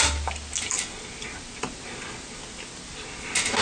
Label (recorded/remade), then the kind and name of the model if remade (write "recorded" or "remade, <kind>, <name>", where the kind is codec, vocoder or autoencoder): recorded